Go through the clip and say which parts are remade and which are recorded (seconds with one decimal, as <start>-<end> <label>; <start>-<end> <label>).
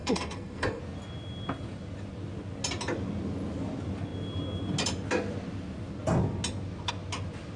0.0-0.8 remade; 0.8-7.6 recorded